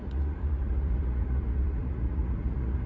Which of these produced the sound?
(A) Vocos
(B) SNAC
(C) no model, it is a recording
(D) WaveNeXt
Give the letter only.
A